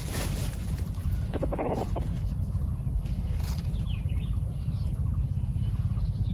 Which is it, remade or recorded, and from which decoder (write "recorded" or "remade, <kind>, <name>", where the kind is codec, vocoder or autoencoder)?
remade, vocoder, BigVGAN v2